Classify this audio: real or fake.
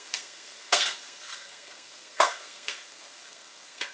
fake